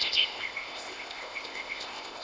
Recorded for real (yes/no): no